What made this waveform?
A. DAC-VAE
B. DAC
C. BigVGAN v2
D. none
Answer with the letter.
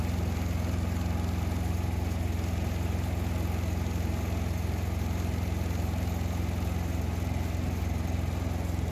D